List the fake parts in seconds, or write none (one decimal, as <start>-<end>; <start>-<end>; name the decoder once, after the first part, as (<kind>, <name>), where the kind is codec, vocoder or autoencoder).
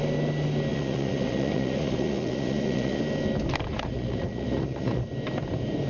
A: 0.7-3.0 (vocoder, Vocos); 3.7-5.0